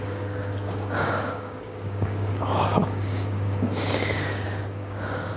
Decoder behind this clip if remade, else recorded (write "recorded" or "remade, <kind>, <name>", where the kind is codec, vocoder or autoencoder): remade, codec, DAC